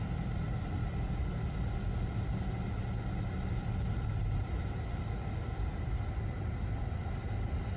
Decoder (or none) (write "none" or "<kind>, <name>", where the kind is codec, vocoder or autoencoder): none